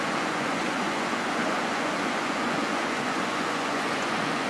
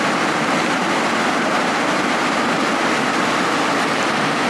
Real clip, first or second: second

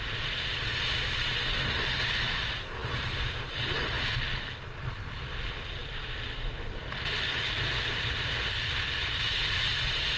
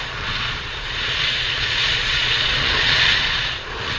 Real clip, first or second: first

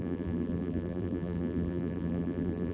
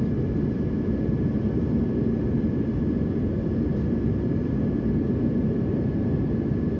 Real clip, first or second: second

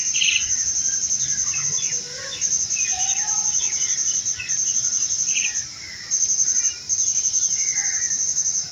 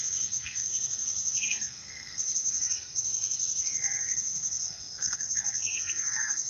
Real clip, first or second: first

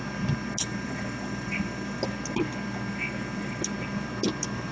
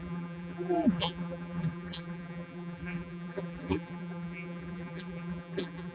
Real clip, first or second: first